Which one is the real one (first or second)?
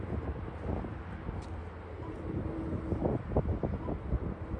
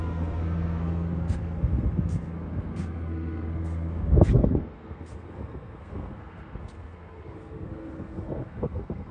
first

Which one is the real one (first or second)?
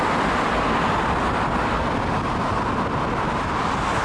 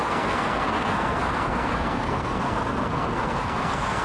first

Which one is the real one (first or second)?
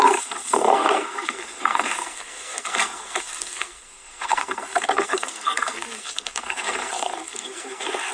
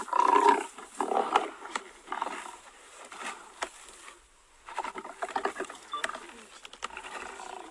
second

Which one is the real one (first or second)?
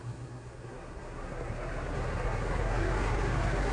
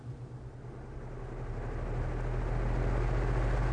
second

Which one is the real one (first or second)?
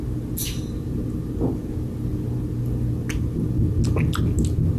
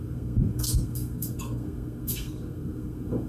first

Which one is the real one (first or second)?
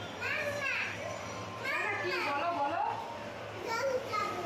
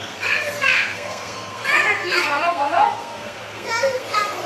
first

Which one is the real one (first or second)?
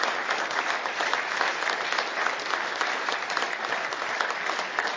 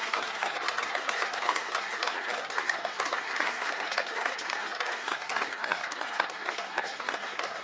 first